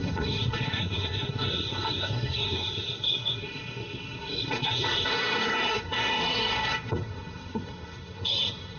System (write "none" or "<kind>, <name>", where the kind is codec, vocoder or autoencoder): codec, SNAC